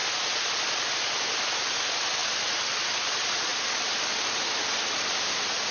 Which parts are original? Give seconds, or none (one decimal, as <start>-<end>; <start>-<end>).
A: 0.0-5.7